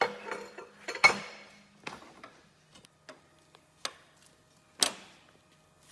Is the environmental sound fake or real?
real